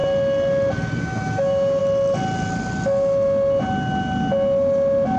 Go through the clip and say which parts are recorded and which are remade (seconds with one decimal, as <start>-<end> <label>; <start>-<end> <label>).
0.0-1.0 recorded; 1.0-1.8 remade; 1.8-5.2 recorded